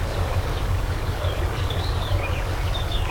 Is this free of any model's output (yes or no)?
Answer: no